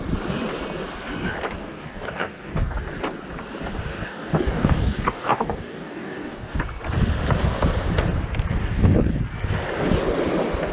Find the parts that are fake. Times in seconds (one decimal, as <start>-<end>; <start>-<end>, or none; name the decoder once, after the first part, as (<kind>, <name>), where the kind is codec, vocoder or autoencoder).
1.6-2.8 (codec, DAC); 3.9-6.6; 8.5-9.2